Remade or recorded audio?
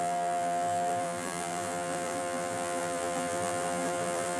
remade